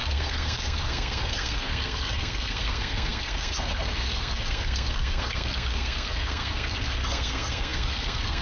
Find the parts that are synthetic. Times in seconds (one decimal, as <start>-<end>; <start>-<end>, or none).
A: 0.0-8.4